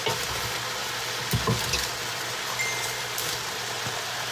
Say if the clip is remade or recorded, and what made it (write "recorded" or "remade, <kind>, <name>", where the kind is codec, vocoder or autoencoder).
recorded